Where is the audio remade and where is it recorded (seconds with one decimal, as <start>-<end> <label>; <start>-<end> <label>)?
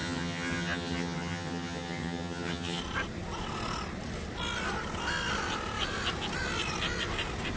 0.0-2.8 remade; 2.8-7.6 recorded